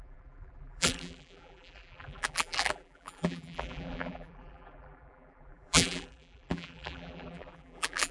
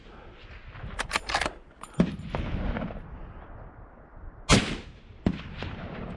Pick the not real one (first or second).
first